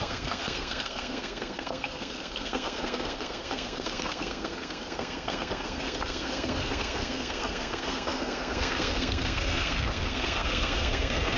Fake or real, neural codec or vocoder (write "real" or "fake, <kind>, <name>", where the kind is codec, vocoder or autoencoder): fake, codec, SNAC